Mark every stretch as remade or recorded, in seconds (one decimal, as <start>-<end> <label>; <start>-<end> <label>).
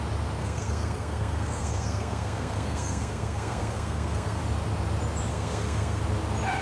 0.0-0.4 recorded; 0.4-4.4 remade; 4.4-5.3 recorded; 5.3-6.0 remade; 6.0-6.6 recorded